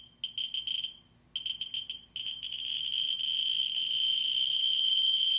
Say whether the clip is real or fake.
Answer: real